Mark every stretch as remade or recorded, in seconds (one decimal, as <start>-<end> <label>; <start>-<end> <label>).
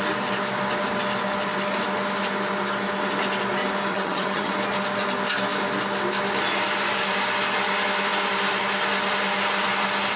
0.0-3.9 recorded; 3.9-4.5 remade; 4.5-10.2 recorded